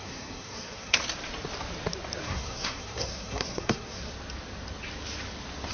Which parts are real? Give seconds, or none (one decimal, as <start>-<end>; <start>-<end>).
1.0-2.2; 4.1-5.7